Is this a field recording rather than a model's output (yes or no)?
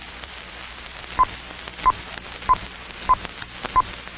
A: yes